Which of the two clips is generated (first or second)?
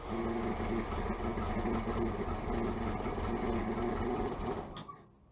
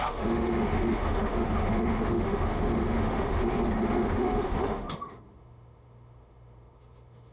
second